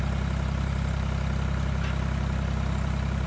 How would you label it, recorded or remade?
remade